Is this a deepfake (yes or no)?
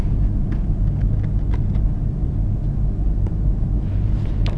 no